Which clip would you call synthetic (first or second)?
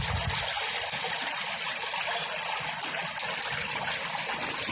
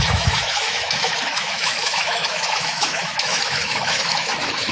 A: second